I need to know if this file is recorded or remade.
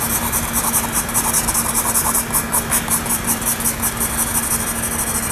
recorded